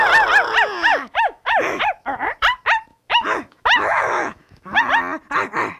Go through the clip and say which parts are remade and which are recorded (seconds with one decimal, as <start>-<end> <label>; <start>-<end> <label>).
0.0-0.9 recorded; 0.9-1.8 remade; 1.8-2.9 recorded; 2.9-4.8 remade; 4.8-5.8 recorded